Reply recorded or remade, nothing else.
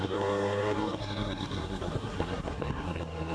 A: remade